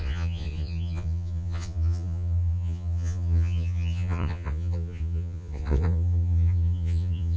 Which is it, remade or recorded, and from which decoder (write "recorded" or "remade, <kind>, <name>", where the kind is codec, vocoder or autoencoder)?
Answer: remade, vocoder, Vocos